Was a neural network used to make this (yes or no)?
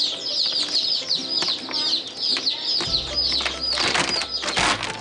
no